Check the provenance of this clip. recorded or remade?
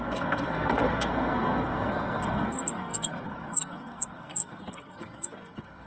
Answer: remade